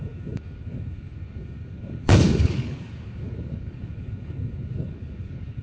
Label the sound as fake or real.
fake